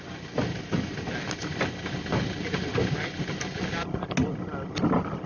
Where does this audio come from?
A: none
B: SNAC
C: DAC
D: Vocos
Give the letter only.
A